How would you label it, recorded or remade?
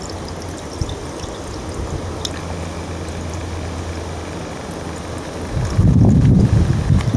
recorded